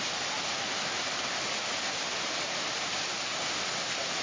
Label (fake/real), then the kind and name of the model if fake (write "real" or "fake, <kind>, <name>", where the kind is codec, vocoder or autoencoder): real